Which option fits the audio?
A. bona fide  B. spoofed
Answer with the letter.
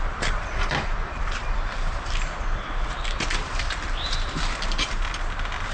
B